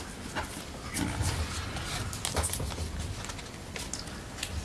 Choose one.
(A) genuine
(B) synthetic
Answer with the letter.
A